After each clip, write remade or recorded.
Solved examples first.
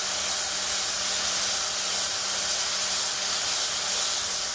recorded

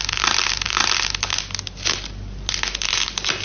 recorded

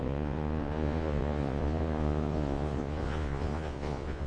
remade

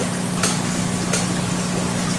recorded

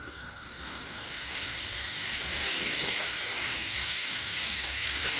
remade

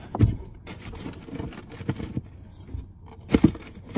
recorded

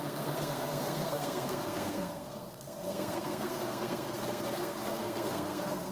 remade